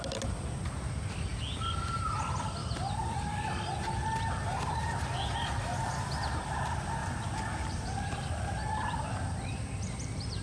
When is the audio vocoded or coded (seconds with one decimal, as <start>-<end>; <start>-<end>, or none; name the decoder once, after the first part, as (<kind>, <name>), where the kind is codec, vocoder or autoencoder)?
2.6-3.2 (vocoder, BigVGAN v2); 7.0-10.4